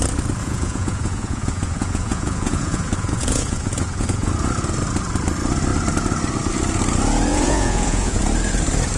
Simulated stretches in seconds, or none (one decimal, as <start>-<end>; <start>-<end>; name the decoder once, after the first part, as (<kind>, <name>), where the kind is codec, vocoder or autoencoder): 0.4-4.3 (vocoder, Vocos); 7.3-8.2